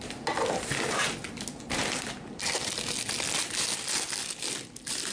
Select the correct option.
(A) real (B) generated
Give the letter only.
A